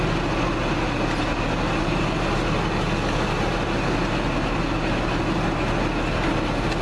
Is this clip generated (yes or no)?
no